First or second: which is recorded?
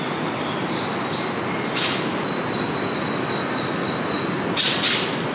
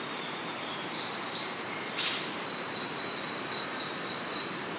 first